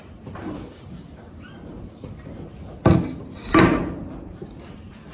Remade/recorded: remade